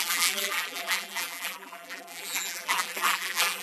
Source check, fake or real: fake